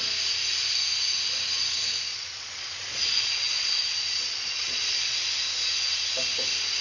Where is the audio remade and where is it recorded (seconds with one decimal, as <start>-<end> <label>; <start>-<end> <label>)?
0.0-2.1 recorded; 2.1-5.2 remade; 5.2-6.8 recorded